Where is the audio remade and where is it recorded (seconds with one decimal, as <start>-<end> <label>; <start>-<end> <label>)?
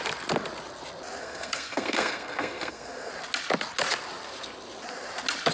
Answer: 0.0-1.2 recorded; 1.2-3.1 remade; 3.1-5.5 recorded